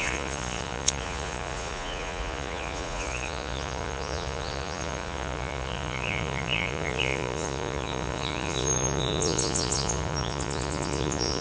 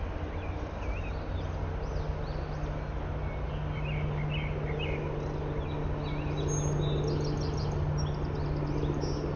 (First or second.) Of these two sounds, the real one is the second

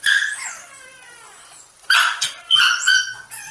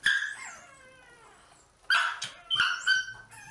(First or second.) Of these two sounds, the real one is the second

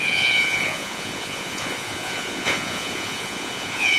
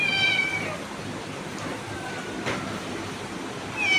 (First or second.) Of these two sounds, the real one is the second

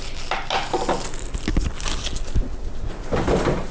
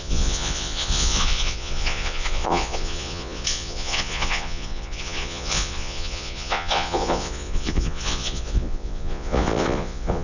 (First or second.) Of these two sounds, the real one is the first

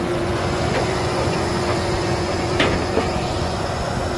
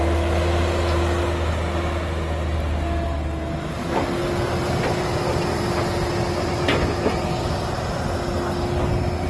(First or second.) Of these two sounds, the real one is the second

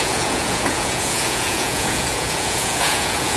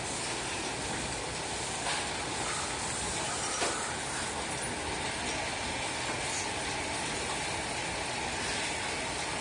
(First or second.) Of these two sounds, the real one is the second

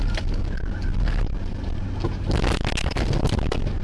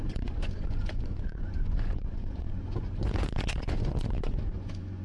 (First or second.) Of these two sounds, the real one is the first